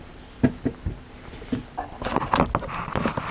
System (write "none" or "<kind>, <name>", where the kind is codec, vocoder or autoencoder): none